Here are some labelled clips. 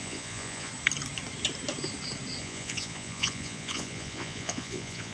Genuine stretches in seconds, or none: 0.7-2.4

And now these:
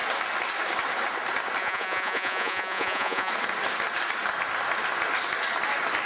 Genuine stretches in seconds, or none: 0.0-1.6; 3.3-6.1

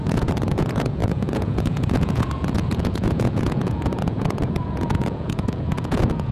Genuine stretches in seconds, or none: none

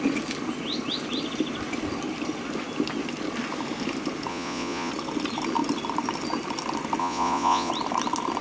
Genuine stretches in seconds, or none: 0.0-4.3; 4.9-7.0; 7.7-8.4